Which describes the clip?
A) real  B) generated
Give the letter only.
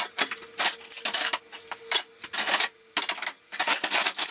A